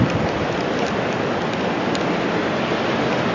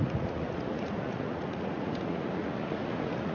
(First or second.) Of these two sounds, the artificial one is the second